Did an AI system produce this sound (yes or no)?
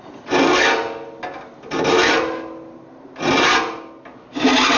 no